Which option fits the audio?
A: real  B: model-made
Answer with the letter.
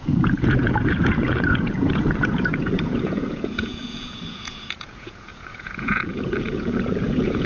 B